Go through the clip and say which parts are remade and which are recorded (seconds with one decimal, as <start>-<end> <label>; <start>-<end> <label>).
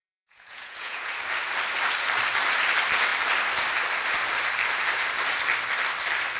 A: 0.0-1.1 remade; 1.1-6.4 recorded